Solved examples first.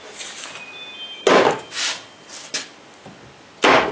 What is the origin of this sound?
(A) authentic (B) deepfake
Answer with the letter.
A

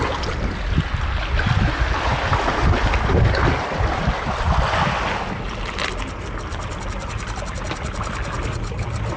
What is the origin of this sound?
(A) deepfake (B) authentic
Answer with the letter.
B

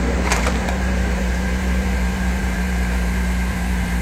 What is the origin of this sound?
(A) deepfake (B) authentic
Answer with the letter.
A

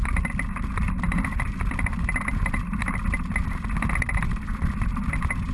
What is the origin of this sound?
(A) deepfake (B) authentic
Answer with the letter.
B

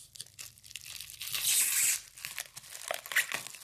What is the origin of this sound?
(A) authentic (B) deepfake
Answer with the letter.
A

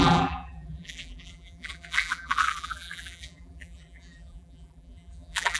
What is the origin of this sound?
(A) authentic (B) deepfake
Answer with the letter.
B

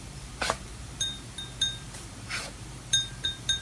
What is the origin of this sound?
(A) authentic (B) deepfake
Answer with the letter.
B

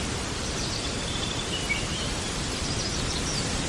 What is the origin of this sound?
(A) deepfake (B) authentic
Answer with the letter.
A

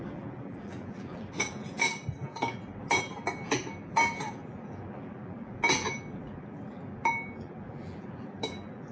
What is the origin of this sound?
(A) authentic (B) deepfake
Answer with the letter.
B